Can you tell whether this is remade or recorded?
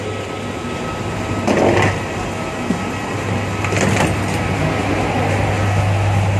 recorded